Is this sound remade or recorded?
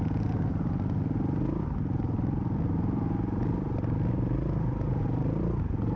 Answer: recorded